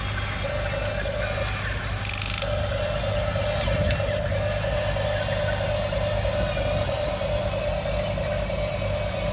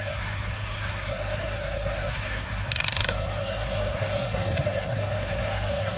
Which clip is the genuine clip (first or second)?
first